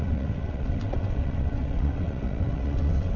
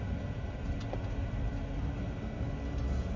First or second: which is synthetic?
first